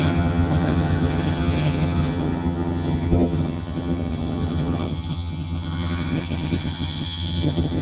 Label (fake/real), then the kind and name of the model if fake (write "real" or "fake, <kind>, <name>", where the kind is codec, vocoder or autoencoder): fake, vocoder, HiFi-GAN